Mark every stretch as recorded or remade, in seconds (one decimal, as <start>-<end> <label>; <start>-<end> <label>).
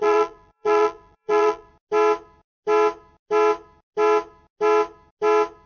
0.0-1.7 remade; 1.7-5.7 recorded